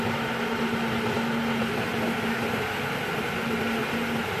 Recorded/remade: recorded